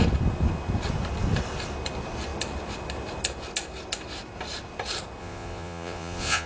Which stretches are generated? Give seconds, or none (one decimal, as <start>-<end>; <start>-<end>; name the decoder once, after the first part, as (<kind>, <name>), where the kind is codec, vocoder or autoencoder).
5.2-6.5 (vocoder, Vocos)